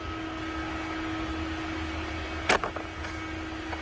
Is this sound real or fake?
real